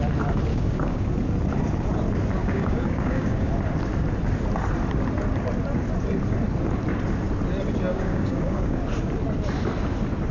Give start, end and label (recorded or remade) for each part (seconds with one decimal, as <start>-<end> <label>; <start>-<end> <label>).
0.0-0.5 recorded; 0.5-1.0 remade; 1.0-2.4 recorded; 2.4-3.5 remade; 3.5-7.9 recorded; 7.9-8.8 remade; 8.8-10.3 recorded